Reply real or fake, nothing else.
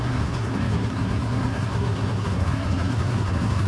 fake